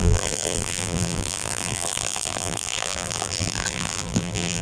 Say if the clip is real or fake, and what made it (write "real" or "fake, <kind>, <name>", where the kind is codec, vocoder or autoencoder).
fake, vocoder, BigVGAN v2